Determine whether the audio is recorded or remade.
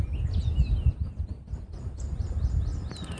recorded